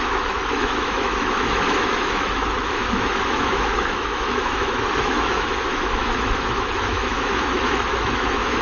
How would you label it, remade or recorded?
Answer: remade